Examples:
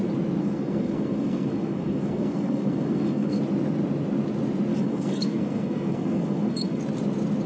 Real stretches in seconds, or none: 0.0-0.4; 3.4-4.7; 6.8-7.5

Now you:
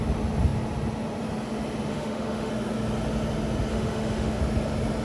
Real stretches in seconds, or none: 0.0-1.9; 2.5-3.7; 4.4-5.0

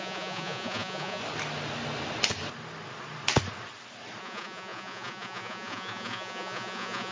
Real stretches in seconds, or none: 1.2-4.2

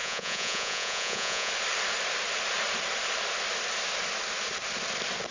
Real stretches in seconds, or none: 1.5-5.3

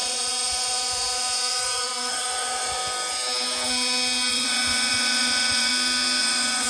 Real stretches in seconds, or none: 2.8-4.3; 5.7-6.2

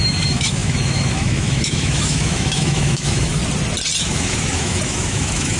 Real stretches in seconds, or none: 3.4-4.0

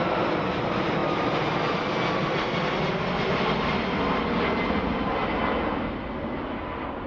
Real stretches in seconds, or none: 0.0-7.1

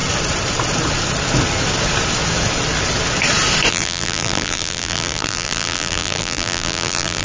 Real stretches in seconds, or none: 0.0-3.7